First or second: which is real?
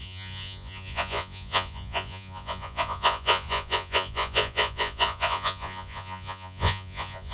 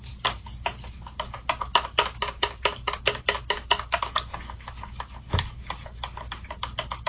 second